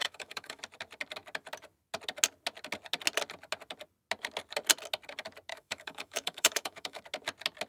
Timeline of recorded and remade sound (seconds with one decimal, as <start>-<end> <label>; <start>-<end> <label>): 0.0-0.6 remade; 0.6-5.5 recorded; 5.5-7.0 remade; 7.0-7.7 recorded